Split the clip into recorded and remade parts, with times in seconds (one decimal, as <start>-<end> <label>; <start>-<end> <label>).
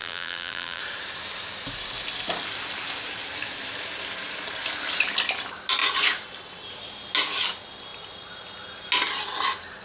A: 0.0-0.8 remade; 0.8-9.8 recorded